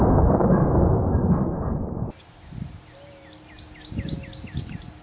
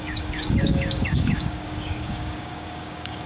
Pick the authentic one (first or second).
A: first